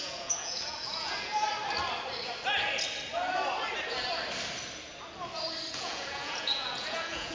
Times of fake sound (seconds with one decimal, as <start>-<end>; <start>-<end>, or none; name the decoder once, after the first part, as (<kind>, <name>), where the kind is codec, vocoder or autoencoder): 0.0-1.3 (vocoder, Vocos); 5.7-7.3